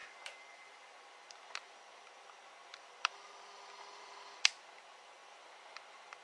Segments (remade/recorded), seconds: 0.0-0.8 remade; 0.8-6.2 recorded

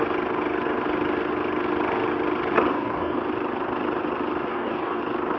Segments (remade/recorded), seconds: 0.0-2.7 recorded; 2.7-3.2 remade; 3.2-4.5 recorded; 4.5-5.0 remade; 5.0-5.4 recorded

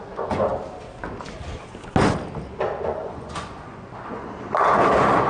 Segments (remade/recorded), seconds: 0.0-0.5 remade; 0.5-2.8 recorded; 2.8-5.3 remade

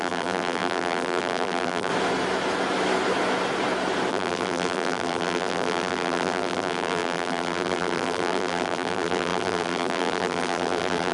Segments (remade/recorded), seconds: 0.0-1.9 remade; 1.9-4.1 recorded; 4.1-11.1 remade

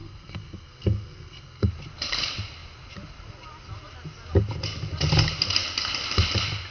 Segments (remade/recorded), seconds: 0.0-1.7 remade; 1.7-6.7 recorded

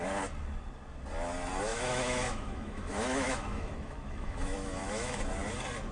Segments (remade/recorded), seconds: 0.0-1.7 recorded; 1.7-5.2 remade; 5.2-5.9 recorded

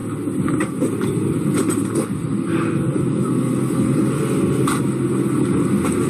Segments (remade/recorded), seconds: 0.0-6.1 recorded